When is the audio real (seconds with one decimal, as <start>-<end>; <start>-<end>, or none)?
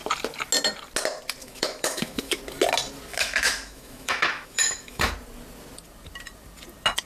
0.0-1.4; 2.4-3.1; 5.1-7.1